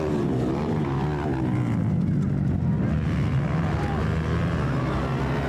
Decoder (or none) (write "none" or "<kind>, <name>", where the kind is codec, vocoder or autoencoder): none